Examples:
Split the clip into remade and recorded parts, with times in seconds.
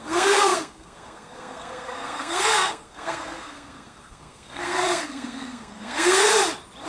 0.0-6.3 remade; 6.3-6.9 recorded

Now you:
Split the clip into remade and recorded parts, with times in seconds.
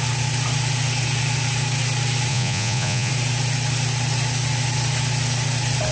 0.0-2.3 recorded; 2.3-3.1 remade; 3.1-5.9 recorded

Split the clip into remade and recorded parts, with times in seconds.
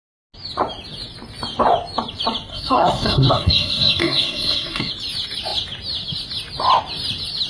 0.0-2.5 recorded; 2.5-4.9 remade; 4.9-7.5 recorded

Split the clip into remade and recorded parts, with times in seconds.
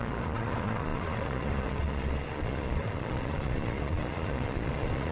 0.0-5.1 remade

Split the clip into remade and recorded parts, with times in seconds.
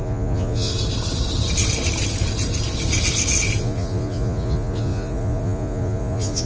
0.0-0.7 remade; 0.7-3.6 recorded; 3.6-6.5 remade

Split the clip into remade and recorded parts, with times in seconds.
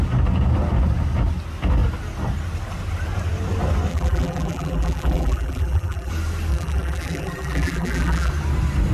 0.0-3.9 recorded; 3.9-6.1 remade; 6.1-6.5 recorded; 6.5-8.3 remade; 8.3-8.9 recorded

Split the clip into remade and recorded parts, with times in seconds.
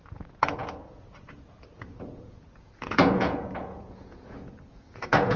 0.0-5.4 remade